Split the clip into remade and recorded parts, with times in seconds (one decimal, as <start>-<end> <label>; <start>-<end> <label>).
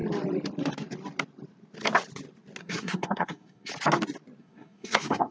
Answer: 0.0-2.6 recorded; 2.6-3.7 remade; 3.7-4.4 recorded; 4.4-5.3 remade